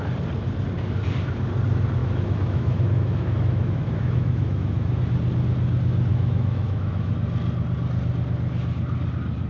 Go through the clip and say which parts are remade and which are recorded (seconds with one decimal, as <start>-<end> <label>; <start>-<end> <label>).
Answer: 0.0-2.0 recorded; 2.0-5.0 remade; 5.0-6.1 recorded; 6.1-7.1 remade; 7.1-9.5 recorded